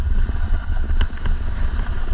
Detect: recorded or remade recorded